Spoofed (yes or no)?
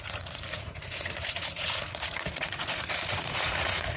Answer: yes